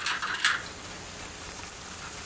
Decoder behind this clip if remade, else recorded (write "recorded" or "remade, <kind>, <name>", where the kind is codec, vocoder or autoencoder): recorded